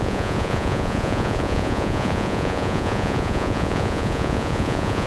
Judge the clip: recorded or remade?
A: remade